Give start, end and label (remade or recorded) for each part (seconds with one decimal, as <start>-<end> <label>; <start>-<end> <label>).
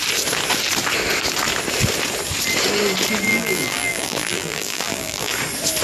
0.0-3.3 recorded; 3.3-5.3 remade; 5.3-5.8 recorded